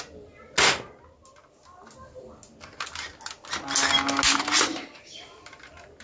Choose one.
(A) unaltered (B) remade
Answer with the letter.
A